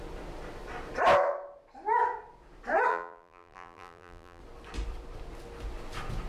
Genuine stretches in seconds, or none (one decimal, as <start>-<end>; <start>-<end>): 0.0-2.9; 4.4-6.3